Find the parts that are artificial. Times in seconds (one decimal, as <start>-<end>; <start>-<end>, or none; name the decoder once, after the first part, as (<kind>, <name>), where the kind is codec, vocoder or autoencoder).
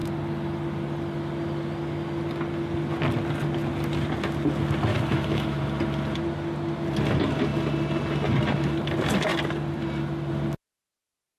4.9-5.6 (autoencoder, DAC-VAE)